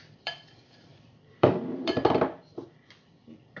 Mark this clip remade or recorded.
remade